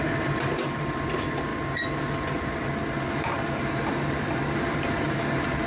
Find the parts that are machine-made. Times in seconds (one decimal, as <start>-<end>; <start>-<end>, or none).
0.0-5.7